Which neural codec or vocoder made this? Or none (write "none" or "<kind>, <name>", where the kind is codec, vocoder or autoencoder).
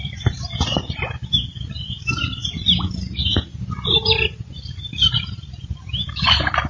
vocoder, BigVGAN v2